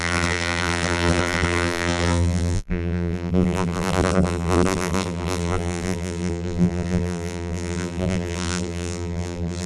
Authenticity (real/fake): fake